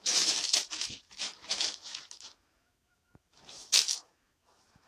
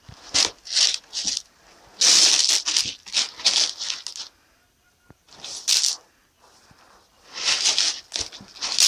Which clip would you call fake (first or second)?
first